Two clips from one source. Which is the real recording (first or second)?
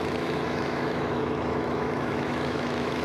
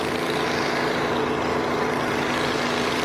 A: second